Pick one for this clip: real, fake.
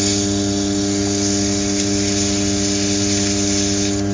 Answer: real